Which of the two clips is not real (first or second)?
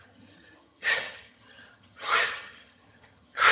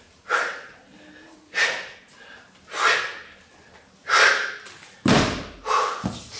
first